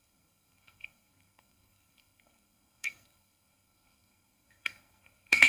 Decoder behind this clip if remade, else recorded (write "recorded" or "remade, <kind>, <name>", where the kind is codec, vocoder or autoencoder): remade, codec, SNAC